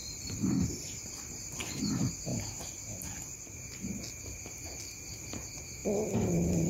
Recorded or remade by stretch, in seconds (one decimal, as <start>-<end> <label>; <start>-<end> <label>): 0.0-1.8 remade; 1.8-6.7 recorded